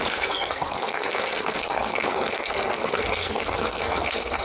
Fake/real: fake